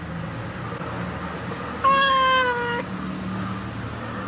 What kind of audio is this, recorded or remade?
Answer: recorded